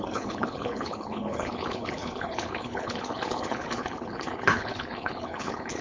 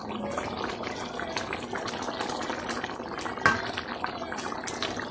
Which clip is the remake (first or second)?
first